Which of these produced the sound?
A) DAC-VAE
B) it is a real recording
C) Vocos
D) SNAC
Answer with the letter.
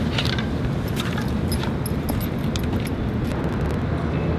B